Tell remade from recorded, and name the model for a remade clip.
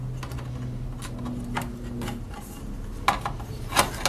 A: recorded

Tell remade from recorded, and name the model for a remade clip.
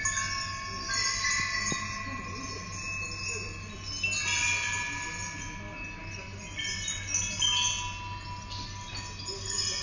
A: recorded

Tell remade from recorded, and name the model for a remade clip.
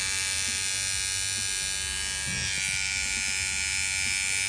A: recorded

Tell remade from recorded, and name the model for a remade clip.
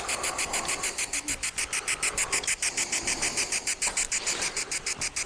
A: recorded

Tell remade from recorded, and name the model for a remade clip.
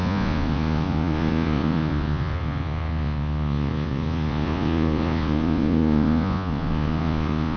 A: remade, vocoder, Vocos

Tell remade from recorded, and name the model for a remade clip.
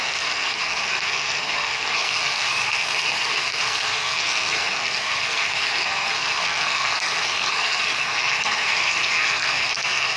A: remade, codec, SNAC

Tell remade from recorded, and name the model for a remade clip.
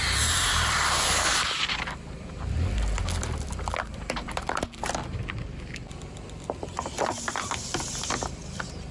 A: remade, vocoder, BigVGAN v2